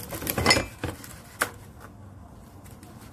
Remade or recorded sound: recorded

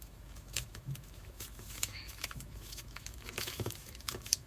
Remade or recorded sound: remade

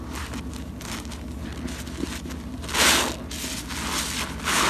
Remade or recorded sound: recorded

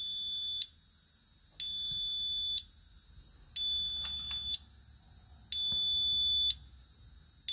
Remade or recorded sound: recorded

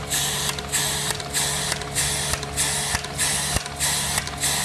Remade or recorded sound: recorded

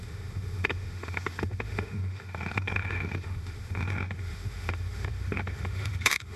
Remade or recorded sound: remade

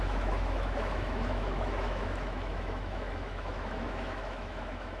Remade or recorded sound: remade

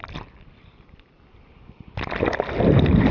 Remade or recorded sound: recorded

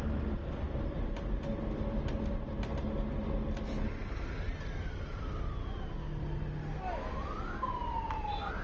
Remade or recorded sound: recorded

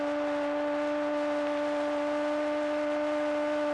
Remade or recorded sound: recorded